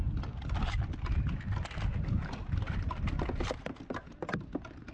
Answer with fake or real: real